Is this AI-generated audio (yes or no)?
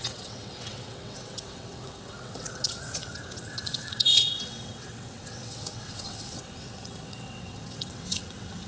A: yes